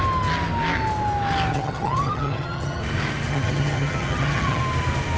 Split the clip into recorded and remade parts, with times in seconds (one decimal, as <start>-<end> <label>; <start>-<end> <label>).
0.0-1.5 recorded; 1.5-2.8 remade; 2.8-3.3 recorded; 3.3-4.6 remade; 4.6-5.2 recorded